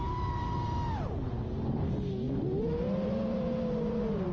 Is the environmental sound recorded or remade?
recorded